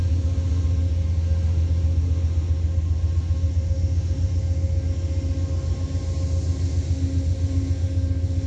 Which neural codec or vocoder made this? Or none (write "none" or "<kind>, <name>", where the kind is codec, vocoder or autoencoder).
none